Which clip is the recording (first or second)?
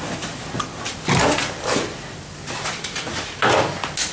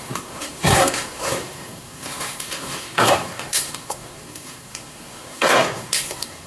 first